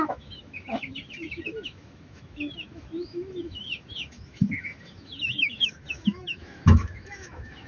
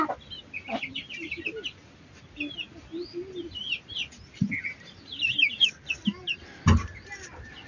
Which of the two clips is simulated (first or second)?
first